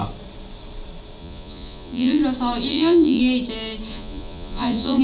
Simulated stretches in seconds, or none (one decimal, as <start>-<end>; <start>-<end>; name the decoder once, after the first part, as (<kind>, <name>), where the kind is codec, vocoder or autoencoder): 1.2-2.2 (vocoder, Vocos); 2.7-3.2; 3.9-5.0